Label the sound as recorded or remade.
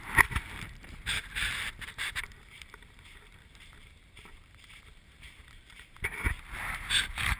remade